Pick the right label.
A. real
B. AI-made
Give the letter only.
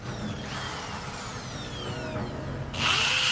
A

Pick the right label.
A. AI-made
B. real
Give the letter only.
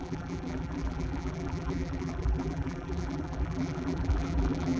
A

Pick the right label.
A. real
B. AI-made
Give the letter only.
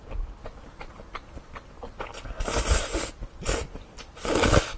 A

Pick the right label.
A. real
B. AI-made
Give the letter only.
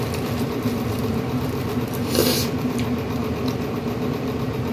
B